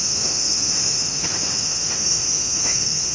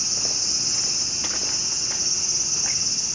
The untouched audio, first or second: second